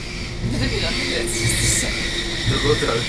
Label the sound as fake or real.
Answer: real